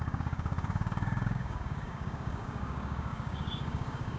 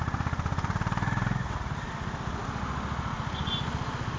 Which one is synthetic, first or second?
first